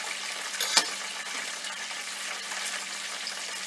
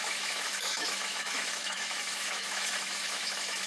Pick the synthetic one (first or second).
second